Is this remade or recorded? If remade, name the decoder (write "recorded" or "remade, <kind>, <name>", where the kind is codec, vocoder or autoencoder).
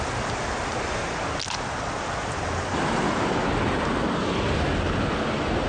recorded